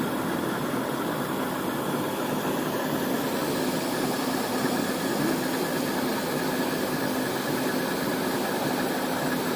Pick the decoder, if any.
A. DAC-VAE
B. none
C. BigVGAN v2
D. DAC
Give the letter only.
B